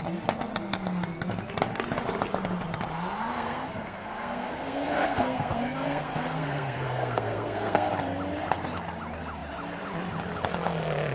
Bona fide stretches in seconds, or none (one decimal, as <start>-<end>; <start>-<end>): 0.0-3.2; 7.9-11.1